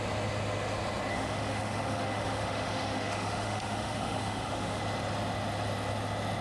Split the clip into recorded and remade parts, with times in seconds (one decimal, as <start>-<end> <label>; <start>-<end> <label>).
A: 0.0-1.1 recorded; 1.1-4.8 remade; 4.8-6.4 recorded